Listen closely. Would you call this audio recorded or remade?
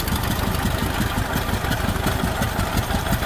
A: recorded